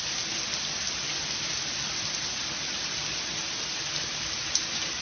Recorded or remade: recorded